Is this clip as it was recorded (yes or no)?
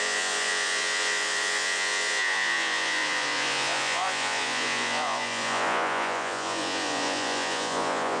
no